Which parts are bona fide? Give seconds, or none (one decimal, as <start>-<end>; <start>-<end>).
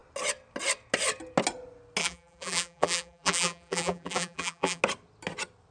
0.0-2.0; 4.8-5.7